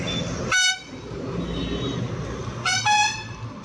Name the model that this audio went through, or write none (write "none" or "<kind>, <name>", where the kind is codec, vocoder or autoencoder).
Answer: none